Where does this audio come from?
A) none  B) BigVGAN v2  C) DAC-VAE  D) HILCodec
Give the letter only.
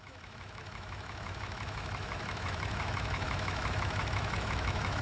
C